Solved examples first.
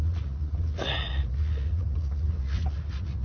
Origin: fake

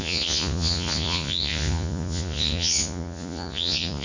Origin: fake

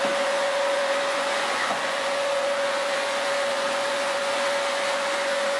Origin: fake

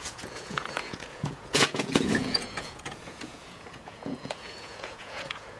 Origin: fake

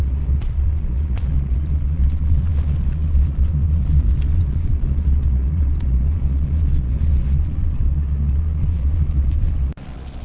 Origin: fake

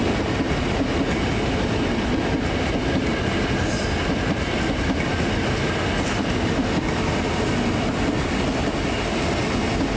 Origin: real